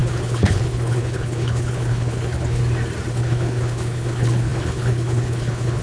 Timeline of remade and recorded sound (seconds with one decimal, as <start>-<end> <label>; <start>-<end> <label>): 0.0-2.6 remade; 2.6-3.1 recorded; 3.1-5.8 remade